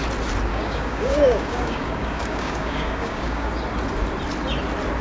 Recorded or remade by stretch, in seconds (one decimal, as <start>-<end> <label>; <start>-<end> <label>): 0.0-0.5 recorded; 0.5-3.5 remade; 3.5-5.0 recorded